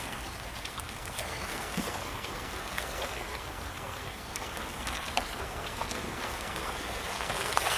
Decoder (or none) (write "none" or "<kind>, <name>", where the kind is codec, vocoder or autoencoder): codec, SNAC